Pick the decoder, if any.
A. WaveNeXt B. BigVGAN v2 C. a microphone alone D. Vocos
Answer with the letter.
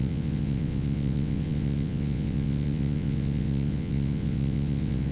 A